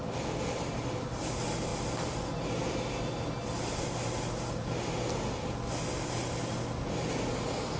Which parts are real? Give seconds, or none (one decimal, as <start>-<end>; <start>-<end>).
0.0-7.8